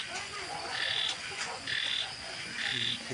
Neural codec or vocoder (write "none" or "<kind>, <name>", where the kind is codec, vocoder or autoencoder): vocoder, Vocos